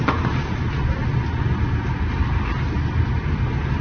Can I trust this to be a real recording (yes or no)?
yes